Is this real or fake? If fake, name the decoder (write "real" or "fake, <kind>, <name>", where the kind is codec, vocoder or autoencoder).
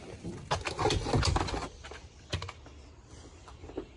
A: real